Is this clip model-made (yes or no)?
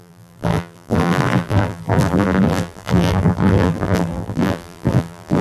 yes